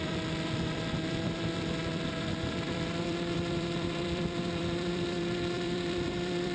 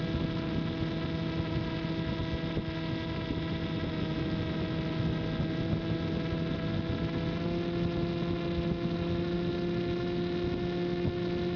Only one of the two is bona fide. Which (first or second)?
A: second